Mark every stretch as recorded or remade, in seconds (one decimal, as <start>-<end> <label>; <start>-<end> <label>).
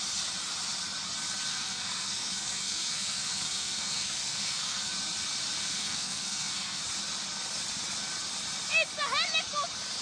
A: 0.0-1.5 recorded; 1.5-4.9 remade; 4.9-5.6 recorded; 5.6-6.8 remade; 6.8-10.0 recorded